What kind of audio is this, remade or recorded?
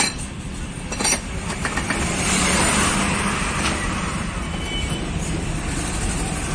remade